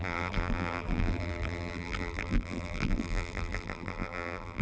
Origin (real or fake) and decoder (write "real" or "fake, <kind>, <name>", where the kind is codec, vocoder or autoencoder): fake, vocoder, BigVGAN v2